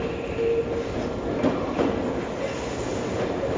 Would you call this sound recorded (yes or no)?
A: yes